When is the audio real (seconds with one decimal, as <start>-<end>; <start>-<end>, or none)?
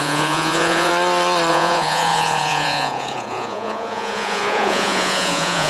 0.9-1.5